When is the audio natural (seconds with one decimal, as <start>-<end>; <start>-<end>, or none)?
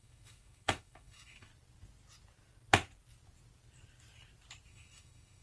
1.5-4.7